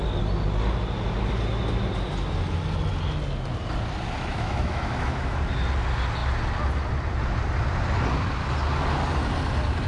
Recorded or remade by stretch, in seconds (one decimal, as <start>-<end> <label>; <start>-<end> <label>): 0.0-4.3 recorded; 4.3-5.4 remade; 5.4-9.9 recorded